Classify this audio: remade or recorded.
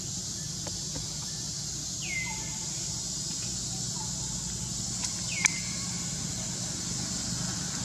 recorded